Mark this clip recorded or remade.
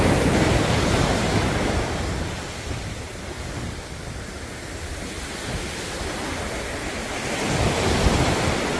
recorded